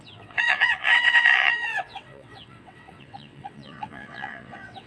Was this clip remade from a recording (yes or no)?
yes